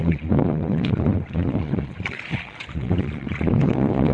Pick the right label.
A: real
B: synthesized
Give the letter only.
B